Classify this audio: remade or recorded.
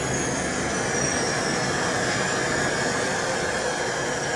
recorded